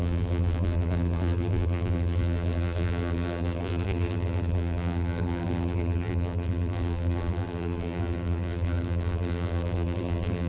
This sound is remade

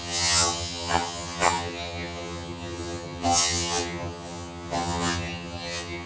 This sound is remade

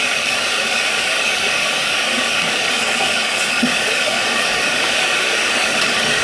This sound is remade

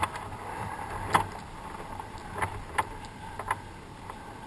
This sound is recorded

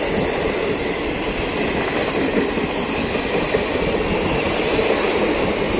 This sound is recorded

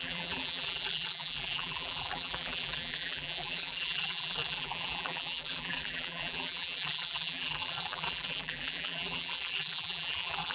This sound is remade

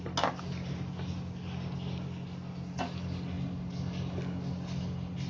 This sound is recorded